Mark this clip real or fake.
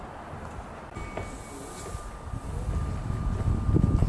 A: real